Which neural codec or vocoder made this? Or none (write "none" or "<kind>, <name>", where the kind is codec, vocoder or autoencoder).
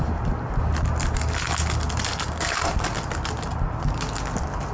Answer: none